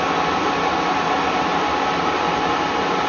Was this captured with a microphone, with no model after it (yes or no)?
yes